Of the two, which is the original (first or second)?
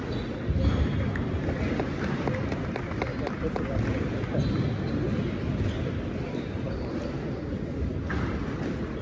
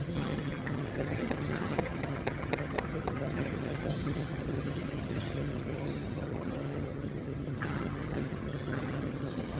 first